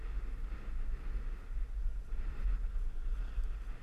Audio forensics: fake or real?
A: real